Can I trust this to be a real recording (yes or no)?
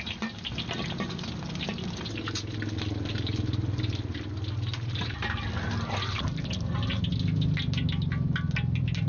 yes